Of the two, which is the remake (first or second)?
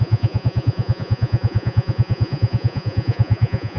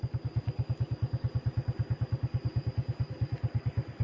first